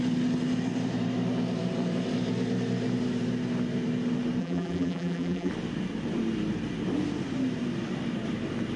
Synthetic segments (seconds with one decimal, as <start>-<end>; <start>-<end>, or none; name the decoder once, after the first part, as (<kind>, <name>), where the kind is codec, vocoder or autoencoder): 4.4-5.5 (vocoder, BigVGAN v2)